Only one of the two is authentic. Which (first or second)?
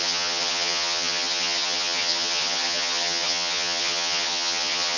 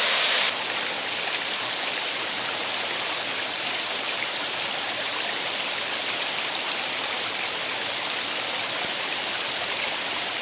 second